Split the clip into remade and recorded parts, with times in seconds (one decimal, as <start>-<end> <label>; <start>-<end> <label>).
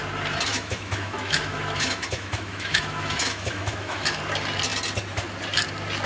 0.0-0.5 recorded; 0.5-4.2 remade; 4.2-6.1 recorded